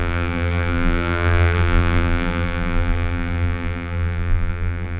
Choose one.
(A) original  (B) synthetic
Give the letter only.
B